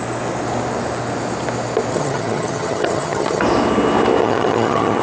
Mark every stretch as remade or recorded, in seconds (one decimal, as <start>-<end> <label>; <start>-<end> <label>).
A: 0.0-1.9 recorded; 1.9-3.4 remade; 3.4-4.2 recorded; 4.2-5.0 remade